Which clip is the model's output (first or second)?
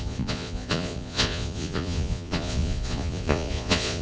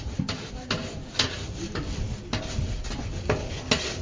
first